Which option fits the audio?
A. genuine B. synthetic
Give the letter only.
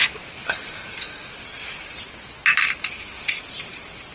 A